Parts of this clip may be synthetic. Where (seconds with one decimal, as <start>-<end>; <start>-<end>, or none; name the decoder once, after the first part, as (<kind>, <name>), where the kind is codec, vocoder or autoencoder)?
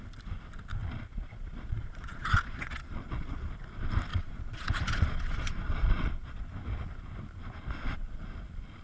0.8-3.5 (vocoder, Vocos); 4.1-6.4